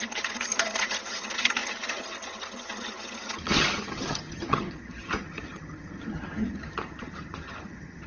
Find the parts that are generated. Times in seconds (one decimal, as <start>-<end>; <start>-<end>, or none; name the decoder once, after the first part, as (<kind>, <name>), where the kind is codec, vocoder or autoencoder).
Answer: 0.0-8.1 (vocoder, HiFi-GAN)